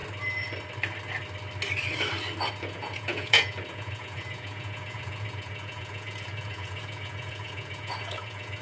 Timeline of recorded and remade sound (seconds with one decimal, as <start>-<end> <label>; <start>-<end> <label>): 0.0-2.5 recorded; 2.5-8.6 remade